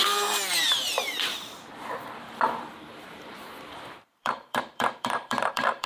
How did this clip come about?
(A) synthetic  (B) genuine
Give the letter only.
A